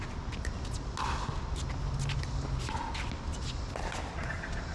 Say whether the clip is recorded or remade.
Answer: recorded